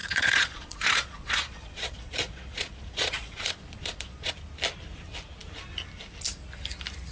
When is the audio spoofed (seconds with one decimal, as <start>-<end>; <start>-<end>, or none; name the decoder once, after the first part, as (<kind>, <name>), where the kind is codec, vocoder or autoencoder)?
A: 0.0-4.3 (vocoder, Vocos)